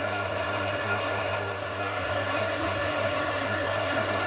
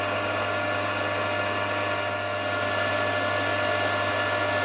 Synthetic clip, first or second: first